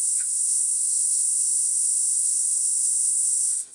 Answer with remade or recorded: remade